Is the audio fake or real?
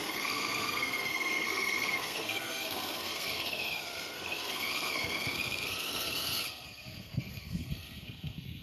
fake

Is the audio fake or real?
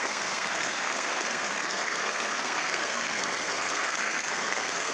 fake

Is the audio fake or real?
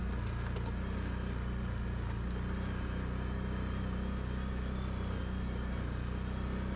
real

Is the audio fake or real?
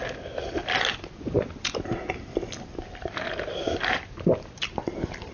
real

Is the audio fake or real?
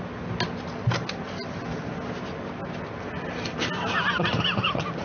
real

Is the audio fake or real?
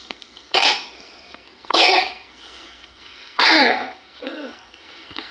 fake